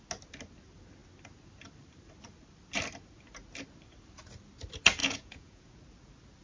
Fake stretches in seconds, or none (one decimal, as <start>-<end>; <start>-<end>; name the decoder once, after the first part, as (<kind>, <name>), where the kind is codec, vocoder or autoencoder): 5.0-5.7 (vocoder, Vocos)